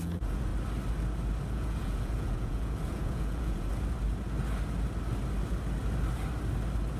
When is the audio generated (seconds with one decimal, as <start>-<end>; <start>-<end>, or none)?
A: 0.0-0.5; 1.5-3.7